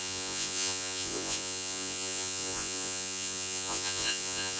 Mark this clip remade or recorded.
remade